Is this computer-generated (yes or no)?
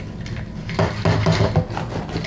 no